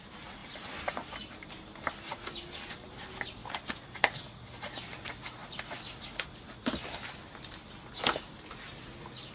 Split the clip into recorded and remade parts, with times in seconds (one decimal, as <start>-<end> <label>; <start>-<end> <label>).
0.0-9.3 recorded